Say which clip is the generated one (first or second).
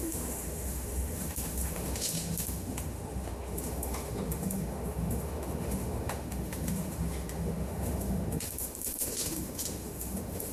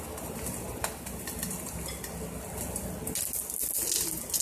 first